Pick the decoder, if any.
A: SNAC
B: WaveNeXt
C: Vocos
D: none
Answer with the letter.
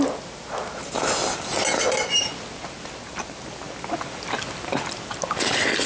D